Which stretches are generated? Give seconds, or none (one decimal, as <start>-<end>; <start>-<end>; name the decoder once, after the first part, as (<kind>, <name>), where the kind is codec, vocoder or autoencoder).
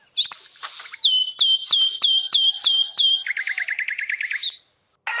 none